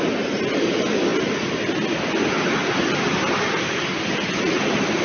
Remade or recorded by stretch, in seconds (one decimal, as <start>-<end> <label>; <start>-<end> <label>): 0.0-5.0 recorded